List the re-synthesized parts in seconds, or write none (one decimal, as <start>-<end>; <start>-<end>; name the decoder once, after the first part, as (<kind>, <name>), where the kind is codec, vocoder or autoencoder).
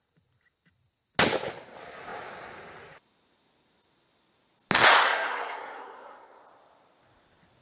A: 5.0-6.4 (codec, SNAC)